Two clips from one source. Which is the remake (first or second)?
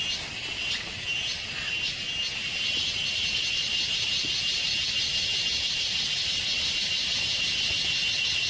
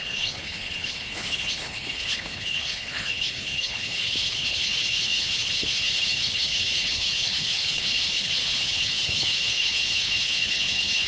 second